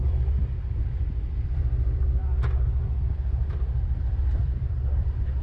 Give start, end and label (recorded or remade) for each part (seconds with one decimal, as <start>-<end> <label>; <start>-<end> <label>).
0.0-2.2 remade; 2.2-3.5 recorded; 3.5-5.4 remade